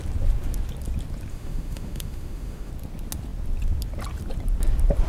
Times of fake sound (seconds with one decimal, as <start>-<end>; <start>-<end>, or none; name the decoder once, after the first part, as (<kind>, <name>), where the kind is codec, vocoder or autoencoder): 1.3-2.7 (autoencoder, DAC-VAE)

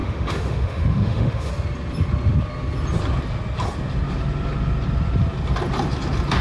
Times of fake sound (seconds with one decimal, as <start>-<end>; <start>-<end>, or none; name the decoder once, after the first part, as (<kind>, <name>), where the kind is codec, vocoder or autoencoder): 0.0-1.5 (autoencoder, DAC-VAE)

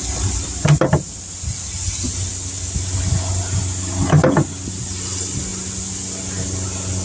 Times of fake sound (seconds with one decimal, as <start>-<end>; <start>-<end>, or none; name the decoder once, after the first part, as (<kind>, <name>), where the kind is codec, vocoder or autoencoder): none